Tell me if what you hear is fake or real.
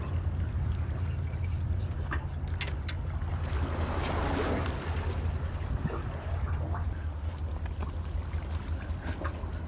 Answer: real